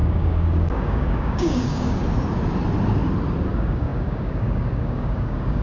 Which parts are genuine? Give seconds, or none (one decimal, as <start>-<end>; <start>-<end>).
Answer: 2.0-3.5